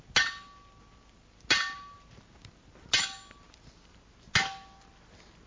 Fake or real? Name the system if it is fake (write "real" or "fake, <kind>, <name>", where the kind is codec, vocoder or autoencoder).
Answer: real